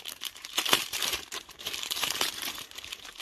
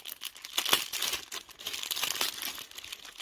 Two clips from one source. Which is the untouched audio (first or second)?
second